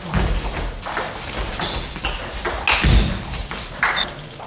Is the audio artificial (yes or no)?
no